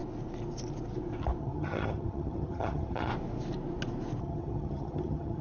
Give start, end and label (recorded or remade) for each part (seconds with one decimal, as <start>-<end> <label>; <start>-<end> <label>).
0.0-1.4 recorded; 1.4-3.1 remade; 3.1-4.2 recorded; 4.2-5.4 remade